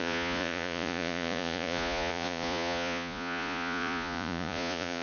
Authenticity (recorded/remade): remade